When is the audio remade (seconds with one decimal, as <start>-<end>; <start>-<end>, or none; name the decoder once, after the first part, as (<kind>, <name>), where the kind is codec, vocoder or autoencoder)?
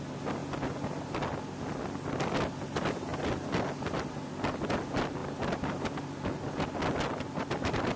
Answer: none